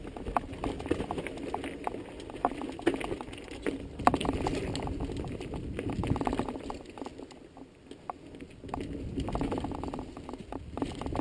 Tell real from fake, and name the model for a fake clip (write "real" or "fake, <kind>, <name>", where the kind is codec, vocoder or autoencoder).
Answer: real